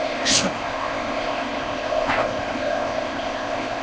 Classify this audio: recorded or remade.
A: remade